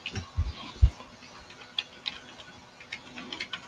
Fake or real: real